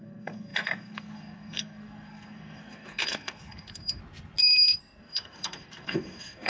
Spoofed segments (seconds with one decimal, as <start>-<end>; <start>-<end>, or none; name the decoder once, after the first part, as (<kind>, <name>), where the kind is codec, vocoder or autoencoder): 0.0-4.0 (codec, SNAC); 4.8-6.5